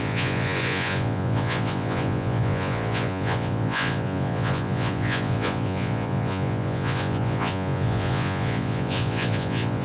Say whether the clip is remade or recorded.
remade